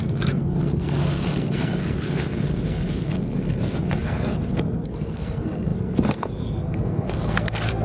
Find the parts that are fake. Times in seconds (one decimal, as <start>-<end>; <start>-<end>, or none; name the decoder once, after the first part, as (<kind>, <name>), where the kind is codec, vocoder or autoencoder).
0.0-7.8 (codec, SNAC)